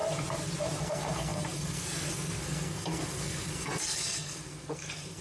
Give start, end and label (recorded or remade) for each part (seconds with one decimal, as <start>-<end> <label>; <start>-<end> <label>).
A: 0.0-0.8 recorded; 0.8-5.2 remade